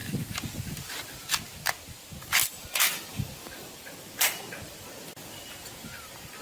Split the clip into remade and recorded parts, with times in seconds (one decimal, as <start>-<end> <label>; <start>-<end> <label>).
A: 0.0-2.4 recorded; 2.4-4.8 remade; 4.8-6.4 recorded